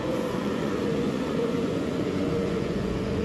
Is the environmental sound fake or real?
fake